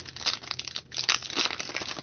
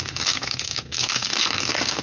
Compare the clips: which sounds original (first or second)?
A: first